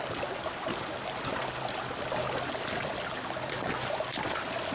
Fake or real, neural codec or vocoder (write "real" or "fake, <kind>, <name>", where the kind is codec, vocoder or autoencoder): real